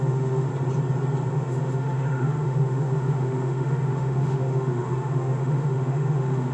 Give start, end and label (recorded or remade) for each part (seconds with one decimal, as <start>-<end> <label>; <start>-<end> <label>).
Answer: 0.0-0.5 remade; 0.5-1.3 recorded; 1.3-6.5 remade